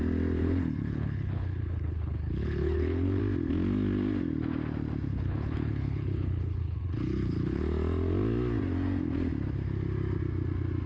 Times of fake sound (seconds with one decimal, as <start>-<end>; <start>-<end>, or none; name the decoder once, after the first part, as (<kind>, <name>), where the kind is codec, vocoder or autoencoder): 0.4-3.2 (codec, HILCodec); 5.1-7.6